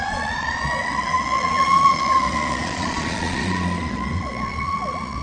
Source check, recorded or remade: remade